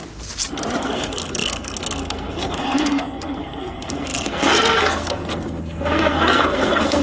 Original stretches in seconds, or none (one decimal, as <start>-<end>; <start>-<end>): 0.0-0.8